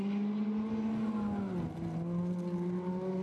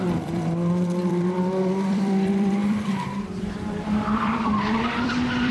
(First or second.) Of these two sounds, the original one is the first